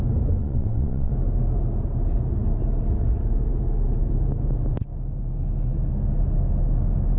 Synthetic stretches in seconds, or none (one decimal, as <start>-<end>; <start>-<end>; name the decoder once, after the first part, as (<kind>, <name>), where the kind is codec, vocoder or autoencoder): 0.4-1.1 (vocoder, WaveNeXt)